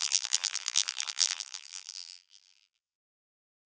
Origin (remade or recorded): remade